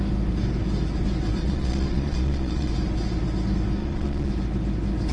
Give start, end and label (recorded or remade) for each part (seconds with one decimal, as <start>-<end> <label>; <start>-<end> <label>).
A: 0.0-1.4 recorded; 1.4-2.7 remade; 2.7-3.8 recorded; 3.8-4.3 remade; 4.3-5.1 recorded